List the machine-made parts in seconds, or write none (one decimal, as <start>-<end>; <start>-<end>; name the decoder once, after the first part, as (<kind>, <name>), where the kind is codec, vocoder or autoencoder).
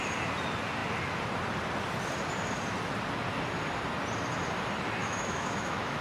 5.0-6.0 (autoencoder, DAC-VAE)